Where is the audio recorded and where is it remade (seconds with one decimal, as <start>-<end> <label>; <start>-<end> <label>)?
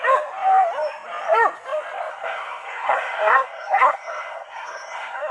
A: 0.0-2.1 recorded; 2.1-5.3 remade